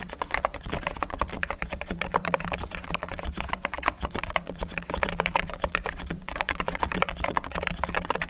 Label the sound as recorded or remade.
remade